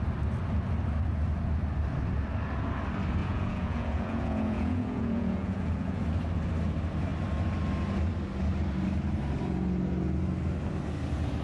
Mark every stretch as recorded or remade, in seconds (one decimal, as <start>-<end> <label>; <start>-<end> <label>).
0.0-3.2 recorded; 3.2-6.0 remade; 6.0-11.4 recorded